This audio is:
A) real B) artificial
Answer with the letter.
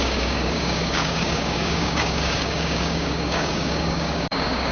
B